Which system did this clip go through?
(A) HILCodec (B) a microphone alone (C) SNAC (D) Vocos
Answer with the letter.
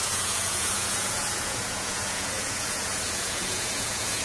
D